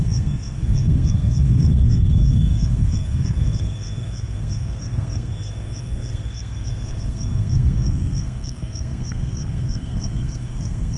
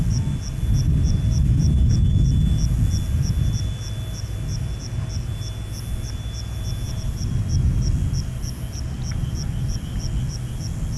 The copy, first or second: first